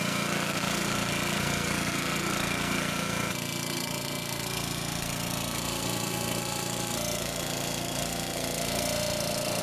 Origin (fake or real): fake